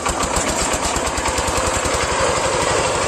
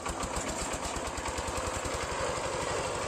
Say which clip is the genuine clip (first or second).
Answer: second